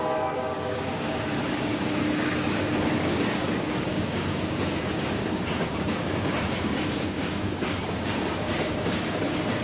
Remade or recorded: remade